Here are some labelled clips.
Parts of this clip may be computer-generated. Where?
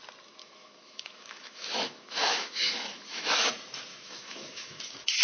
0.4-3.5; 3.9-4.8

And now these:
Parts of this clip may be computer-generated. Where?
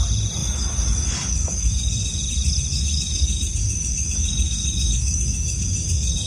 0.4-2.2; 2.7-6.3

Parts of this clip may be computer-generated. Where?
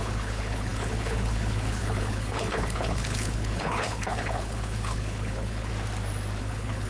0.0-5.7; 6.4-6.9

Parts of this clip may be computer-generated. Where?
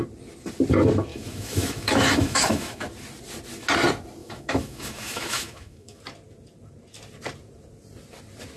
1.1-2.8; 4.2-6.0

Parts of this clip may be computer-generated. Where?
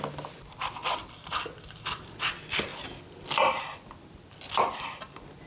0.8-2.0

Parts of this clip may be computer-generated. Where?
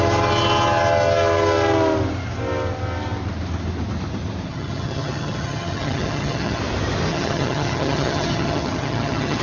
4.5-6.6; 7.1-9.4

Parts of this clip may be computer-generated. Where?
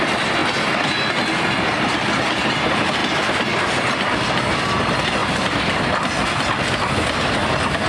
5.2-5.8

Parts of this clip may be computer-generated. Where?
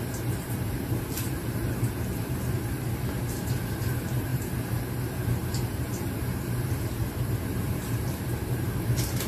0.0-9.3